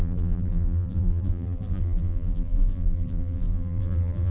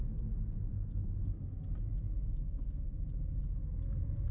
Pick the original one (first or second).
second